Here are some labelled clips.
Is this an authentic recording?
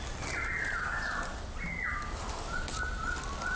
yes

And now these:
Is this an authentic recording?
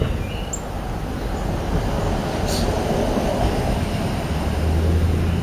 yes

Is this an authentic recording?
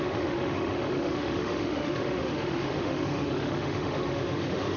no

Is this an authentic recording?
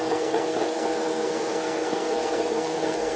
no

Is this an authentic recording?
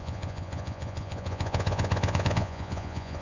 no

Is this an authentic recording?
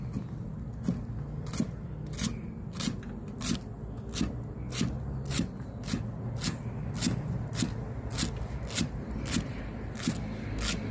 yes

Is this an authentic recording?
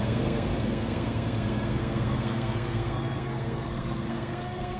no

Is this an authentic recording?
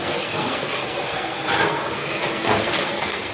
no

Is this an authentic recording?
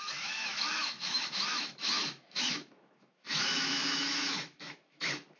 no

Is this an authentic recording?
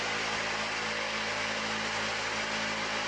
yes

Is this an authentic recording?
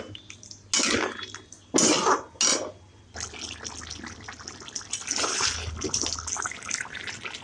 yes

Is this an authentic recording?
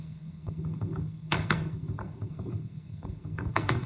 no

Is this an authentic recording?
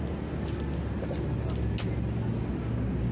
yes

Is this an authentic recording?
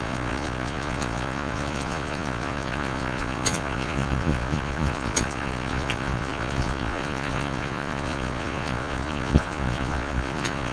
no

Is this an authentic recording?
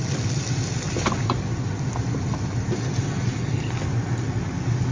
yes